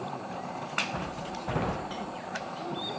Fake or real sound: fake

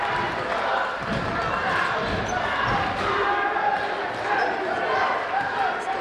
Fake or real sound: real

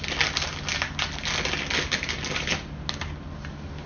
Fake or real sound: real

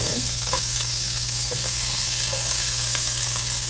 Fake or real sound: fake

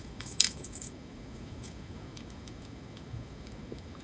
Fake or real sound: fake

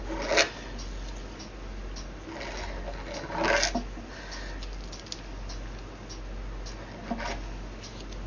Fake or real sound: real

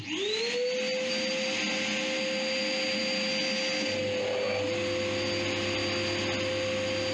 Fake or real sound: real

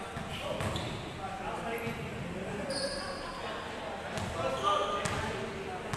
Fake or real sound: real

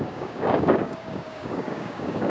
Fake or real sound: fake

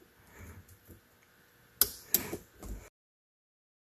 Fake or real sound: real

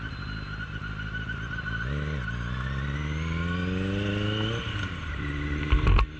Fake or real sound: real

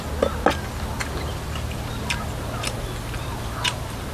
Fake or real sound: real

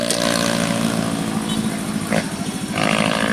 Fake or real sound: real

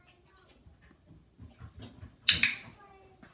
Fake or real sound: real